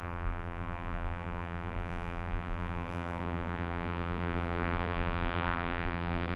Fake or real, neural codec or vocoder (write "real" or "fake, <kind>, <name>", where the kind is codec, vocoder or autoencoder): fake, vocoder, BigVGAN v2